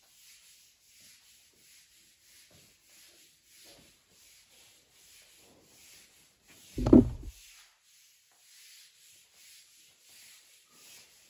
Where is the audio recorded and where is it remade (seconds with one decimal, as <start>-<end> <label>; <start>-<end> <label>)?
0.0-11.3 recorded